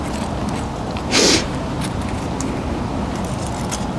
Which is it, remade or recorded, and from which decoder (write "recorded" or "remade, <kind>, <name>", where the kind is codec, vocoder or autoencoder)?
recorded